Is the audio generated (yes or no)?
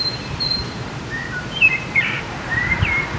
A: yes